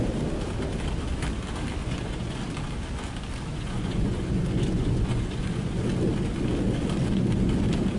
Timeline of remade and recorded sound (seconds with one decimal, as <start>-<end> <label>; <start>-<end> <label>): 0.0-1.8 recorded; 1.8-2.5 remade; 2.5-3.5 recorded; 3.5-5.9 remade; 5.9-7.0 recorded; 7.0-7.6 remade; 7.6-8.0 recorded